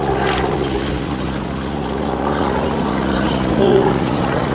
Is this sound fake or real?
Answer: fake